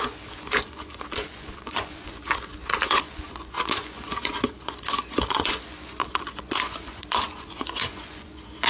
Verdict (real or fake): fake